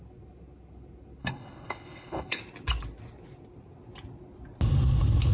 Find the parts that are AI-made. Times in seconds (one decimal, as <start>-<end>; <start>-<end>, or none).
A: 1.2-2.4